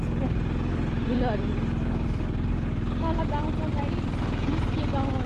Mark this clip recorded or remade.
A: recorded